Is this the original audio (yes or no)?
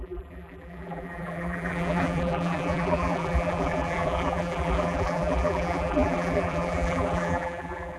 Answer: no